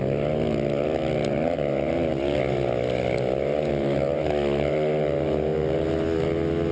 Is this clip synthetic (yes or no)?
no